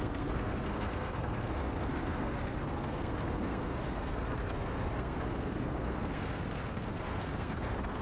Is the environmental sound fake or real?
fake